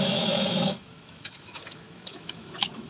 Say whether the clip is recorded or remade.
remade